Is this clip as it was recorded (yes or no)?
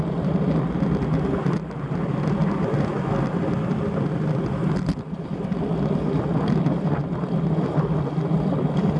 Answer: yes